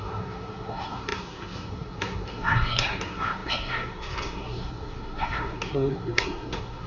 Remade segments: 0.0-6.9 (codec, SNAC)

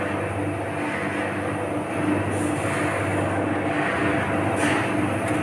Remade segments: 3.1-3.9 (vocoder, BigVGAN v2)

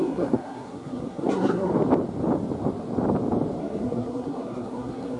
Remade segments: 0.0-1.7 (codec, SNAC); 3.6-5.2

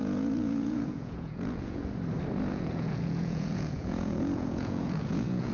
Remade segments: 0.0-1.8 (vocoder, Vocos); 2.5-5.5

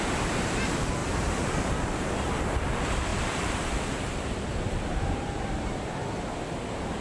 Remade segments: 1.0-2.1 (vocoder, BigVGAN v2); 3.1-5.6

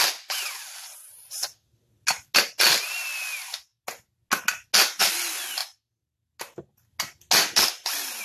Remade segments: none

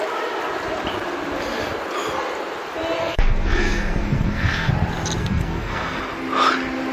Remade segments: 3.0-4.7 (codec, SNAC); 5.2-6.0

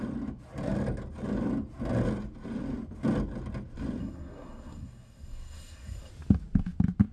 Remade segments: 4.0-6.1 (codec, SNAC)